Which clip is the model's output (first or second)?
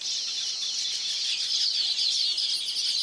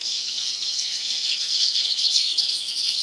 second